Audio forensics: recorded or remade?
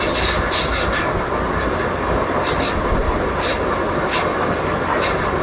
recorded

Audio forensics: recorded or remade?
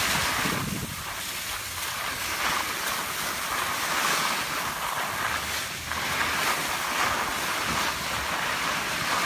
recorded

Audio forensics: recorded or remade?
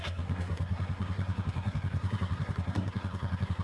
remade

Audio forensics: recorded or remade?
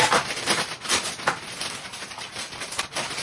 remade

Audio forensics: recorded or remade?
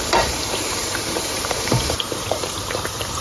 remade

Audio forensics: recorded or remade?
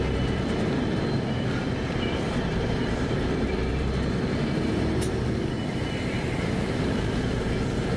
remade